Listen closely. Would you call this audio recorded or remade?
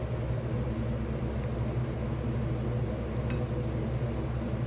recorded